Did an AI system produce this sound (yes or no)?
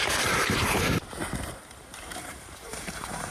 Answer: yes